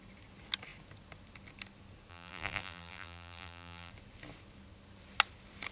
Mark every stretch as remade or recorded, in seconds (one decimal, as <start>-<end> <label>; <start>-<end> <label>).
0.0-2.1 recorded; 2.1-3.9 remade; 3.9-5.7 recorded